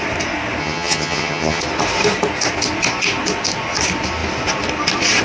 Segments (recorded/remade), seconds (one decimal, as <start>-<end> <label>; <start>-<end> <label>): 0.0-0.6 recorded; 0.6-1.6 remade; 1.6-5.2 recorded